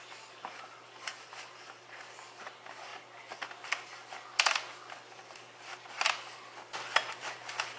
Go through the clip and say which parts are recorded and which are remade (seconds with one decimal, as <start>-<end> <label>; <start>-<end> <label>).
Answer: 0.0-7.8 recorded

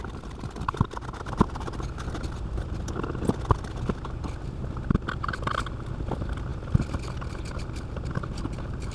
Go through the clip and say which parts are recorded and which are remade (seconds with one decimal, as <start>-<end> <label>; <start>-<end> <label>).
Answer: 0.0-8.9 recorded